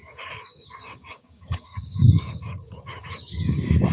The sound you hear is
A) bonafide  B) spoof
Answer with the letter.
B